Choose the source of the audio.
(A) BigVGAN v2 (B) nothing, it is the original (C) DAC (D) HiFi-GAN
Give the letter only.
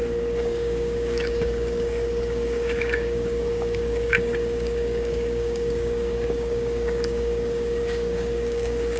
C